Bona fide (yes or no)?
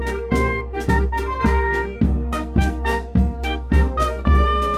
no